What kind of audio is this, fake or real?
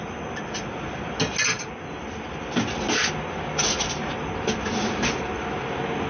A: real